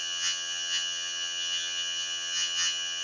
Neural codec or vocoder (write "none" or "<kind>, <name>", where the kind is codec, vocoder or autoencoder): vocoder, HiFi-GAN